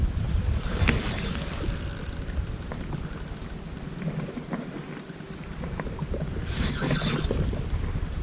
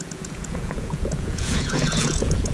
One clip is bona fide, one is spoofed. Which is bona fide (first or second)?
first